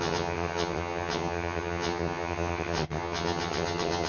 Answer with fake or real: fake